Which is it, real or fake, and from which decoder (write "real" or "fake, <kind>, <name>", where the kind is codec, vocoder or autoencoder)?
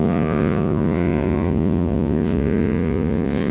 fake, vocoder, Vocos